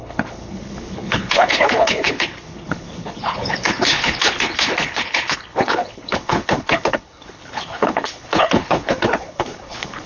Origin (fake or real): fake